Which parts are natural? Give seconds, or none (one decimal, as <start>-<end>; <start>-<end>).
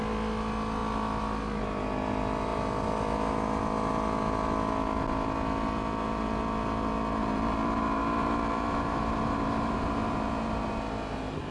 0.0-7.2; 10.8-11.5